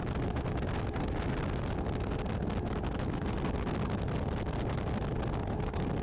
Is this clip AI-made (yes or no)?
no